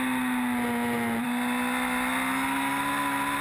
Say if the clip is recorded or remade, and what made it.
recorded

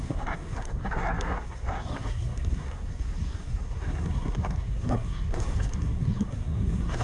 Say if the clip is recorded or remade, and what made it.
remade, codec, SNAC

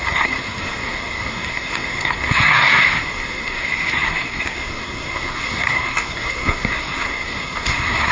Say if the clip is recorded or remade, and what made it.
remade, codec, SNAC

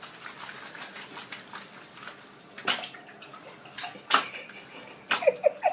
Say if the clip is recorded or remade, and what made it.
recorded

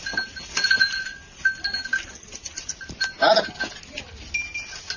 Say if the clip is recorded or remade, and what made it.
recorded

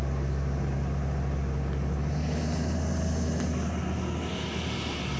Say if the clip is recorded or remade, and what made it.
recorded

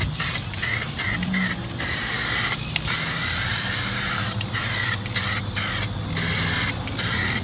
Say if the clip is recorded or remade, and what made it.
recorded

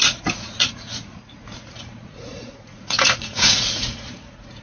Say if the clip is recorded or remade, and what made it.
remade, vocoder, Vocos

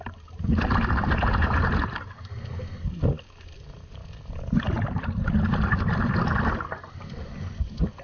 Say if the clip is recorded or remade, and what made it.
recorded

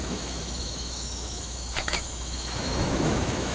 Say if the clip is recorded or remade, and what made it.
remade, autoencoder, DAC-VAE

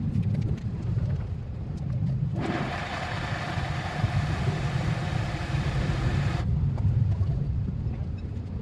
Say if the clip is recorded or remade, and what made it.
remade, vocoder, BigVGAN v2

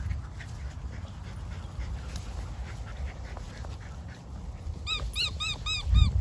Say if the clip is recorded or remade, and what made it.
recorded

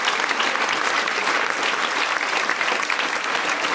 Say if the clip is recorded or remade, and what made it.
remade, vocoder, BigVGAN v2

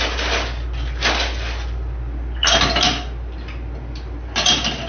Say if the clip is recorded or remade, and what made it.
recorded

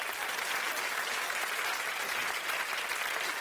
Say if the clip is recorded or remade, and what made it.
recorded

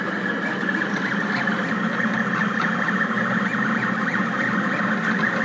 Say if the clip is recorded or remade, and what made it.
recorded